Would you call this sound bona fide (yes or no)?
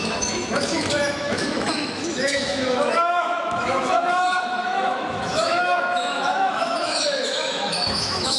no